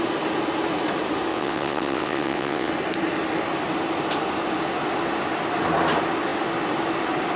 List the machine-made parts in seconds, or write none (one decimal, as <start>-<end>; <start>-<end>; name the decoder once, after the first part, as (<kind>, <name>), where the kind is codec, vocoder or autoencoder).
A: 1.3-2.7 (vocoder, WaveNeXt)